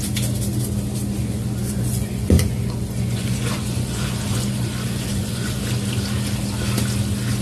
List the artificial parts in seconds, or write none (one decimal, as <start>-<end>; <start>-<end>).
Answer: 1.2-5.6